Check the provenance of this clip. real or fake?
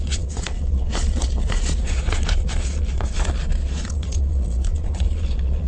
fake